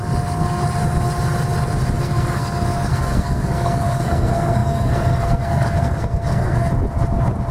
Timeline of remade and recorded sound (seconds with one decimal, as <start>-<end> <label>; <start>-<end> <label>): 0.0-0.6 remade; 0.6-2.0 recorded; 2.0-6.7 remade; 6.7-7.5 recorded